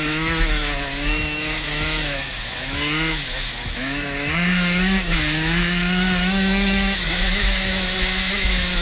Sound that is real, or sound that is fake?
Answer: fake